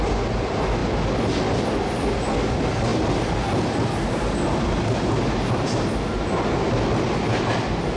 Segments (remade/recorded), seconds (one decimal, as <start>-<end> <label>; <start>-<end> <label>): 0.0-8.0 recorded